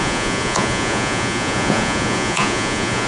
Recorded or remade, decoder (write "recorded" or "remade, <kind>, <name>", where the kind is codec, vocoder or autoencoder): remade, vocoder, Vocos